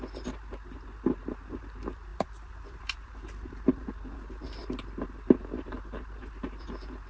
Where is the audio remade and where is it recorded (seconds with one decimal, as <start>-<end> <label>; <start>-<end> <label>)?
0.0-2.1 recorded; 2.1-3.9 remade; 3.9-7.1 recorded